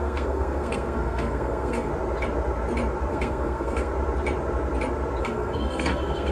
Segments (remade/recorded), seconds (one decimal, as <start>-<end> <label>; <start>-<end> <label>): 0.0-1.9 remade; 1.9-3.1 recorded; 3.1-3.9 remade; 3.9-5.2 recorded; 5.2-6.3 remade